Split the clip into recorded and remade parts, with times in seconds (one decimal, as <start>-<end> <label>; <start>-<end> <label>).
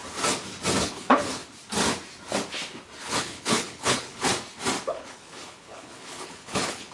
0.0-0.8 recorded; 0.8-1.4 remade; 1.4-3.0 recorded; 3.0-4.3 remade; 4.3-4.9 recorded; 4.9-6.9 remade